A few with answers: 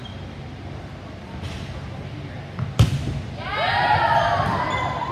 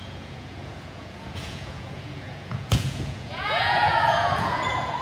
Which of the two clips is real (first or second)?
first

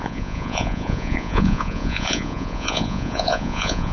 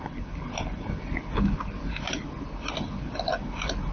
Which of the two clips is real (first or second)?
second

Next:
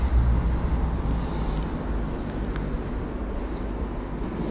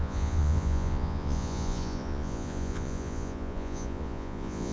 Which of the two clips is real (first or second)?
first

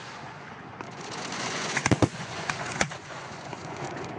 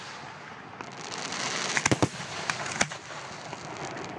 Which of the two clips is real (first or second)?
second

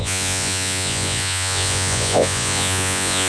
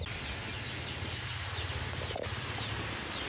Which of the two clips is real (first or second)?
second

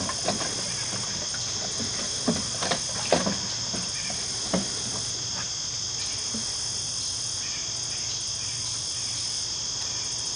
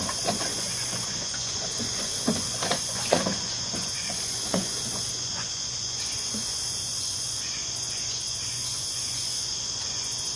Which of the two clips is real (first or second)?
first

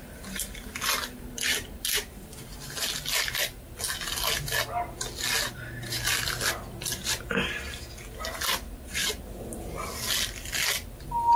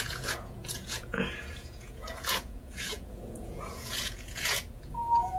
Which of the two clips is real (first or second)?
first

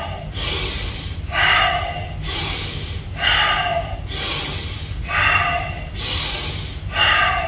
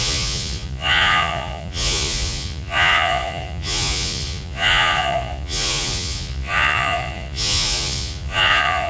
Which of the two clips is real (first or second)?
first